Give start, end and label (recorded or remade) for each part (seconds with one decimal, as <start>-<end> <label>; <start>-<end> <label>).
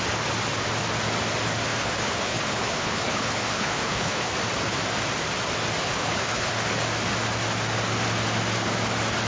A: 0.0-1.7 recorded; 1.7-4.3 remade; 4.3-5.8 recorded; 5.8-6.5 remade; 6.5-9.3 recorded